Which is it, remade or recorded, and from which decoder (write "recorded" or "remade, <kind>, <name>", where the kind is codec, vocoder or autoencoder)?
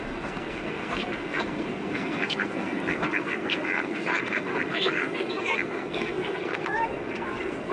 remade, codec, SNAC